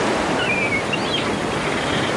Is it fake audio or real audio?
real